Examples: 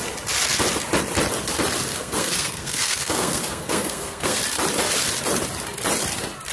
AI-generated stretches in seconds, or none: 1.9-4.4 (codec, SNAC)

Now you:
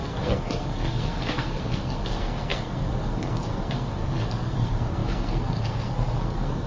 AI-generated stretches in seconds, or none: 0.0-6.7 (codec, SNAC)